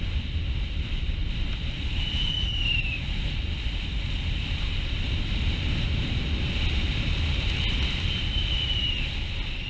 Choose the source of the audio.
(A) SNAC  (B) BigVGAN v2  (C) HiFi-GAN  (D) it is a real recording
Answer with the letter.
D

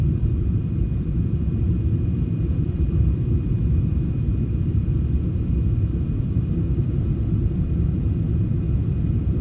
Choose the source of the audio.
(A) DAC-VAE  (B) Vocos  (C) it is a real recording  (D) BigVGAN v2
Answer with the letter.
D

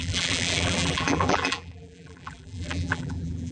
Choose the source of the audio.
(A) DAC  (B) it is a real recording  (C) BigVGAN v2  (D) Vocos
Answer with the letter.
C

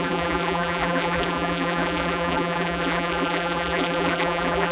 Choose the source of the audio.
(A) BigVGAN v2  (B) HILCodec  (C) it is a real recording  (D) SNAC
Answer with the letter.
A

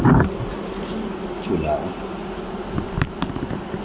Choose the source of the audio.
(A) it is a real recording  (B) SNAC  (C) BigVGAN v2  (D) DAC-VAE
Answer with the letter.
C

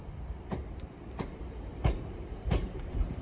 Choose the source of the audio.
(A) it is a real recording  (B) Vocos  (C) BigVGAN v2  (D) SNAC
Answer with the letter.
C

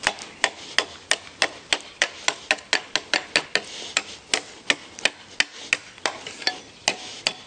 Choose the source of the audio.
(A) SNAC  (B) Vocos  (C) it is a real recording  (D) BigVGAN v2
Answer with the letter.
C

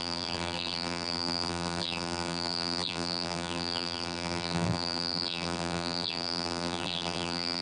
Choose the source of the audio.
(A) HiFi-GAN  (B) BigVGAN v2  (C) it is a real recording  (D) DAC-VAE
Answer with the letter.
B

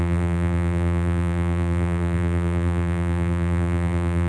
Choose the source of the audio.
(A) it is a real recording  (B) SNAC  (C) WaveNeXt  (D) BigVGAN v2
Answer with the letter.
D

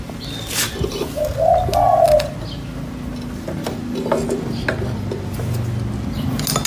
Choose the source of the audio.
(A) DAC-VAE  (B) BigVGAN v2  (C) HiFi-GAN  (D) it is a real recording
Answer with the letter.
D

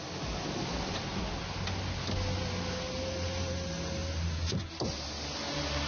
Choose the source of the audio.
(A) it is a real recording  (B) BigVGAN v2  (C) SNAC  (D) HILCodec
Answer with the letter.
A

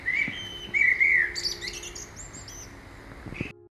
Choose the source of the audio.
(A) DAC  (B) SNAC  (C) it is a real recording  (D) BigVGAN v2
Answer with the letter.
C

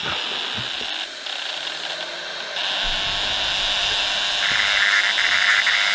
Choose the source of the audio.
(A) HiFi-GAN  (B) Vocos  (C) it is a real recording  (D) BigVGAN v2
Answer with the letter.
C